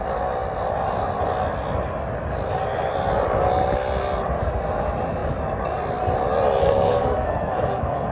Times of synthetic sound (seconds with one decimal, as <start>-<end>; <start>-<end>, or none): 6.6-8.1